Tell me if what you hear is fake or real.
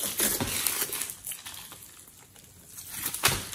real